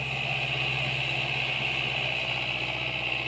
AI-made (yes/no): no